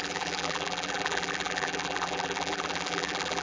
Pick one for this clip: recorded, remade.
remade